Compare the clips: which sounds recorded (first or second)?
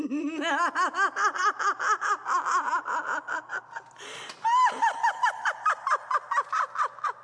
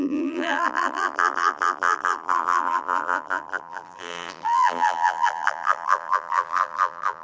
first